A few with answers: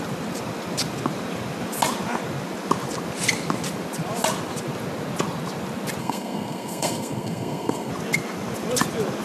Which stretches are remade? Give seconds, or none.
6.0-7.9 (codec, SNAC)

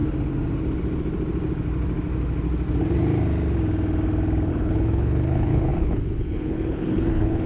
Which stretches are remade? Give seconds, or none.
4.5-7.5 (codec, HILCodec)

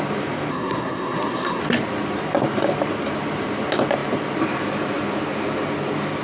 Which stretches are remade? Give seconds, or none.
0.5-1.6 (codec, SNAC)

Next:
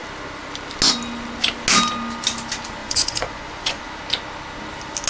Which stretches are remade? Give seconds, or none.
2.8-3.8 (vocoder, Vocos)

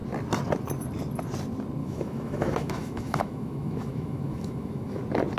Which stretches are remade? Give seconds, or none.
1.8-5.0 (autoencoder, DAC-VAE)